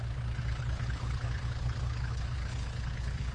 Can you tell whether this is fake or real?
fake